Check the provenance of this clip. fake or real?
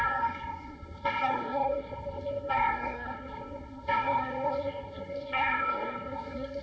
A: fake